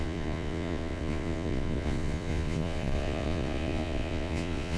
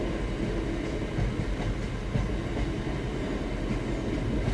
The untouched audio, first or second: second